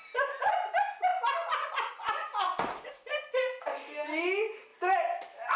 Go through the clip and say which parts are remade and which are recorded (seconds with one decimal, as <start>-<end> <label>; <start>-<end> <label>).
0.0-5.6 recorded